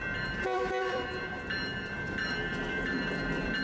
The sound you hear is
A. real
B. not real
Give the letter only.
B